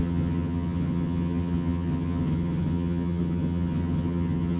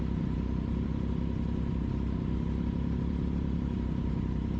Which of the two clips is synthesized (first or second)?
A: first